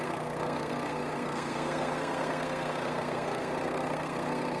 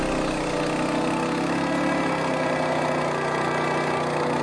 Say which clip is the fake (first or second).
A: first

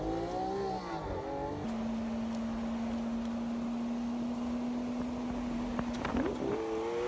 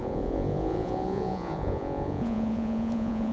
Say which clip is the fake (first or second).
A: second